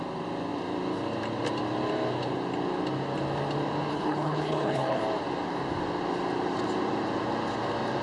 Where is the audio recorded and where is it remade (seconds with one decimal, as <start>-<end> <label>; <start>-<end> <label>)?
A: 0.0-3.9 recorded; 3.9-5.0 remade; 5.0-8.0 recorded